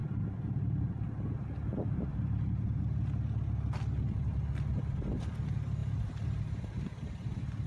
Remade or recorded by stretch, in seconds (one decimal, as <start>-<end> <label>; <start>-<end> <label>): 0.0-7.7 recorded